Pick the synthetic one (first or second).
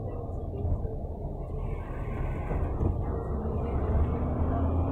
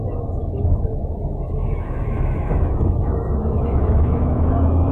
second